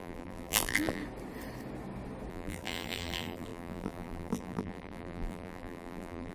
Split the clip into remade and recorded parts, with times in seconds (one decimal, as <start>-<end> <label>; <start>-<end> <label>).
0.0-1.0 remade; 1.0-2.3 recorded; 2.3-6.3 remade